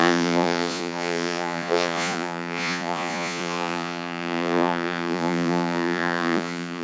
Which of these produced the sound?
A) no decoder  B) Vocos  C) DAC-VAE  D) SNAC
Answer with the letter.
B